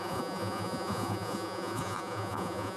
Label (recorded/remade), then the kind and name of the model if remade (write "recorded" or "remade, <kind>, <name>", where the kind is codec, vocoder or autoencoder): remade, vocoder, Vocos